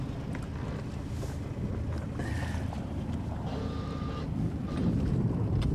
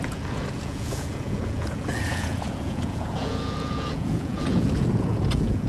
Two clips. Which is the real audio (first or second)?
first